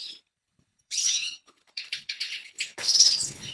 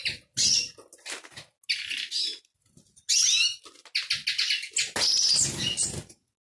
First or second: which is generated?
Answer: first